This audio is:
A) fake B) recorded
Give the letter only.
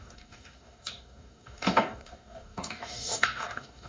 A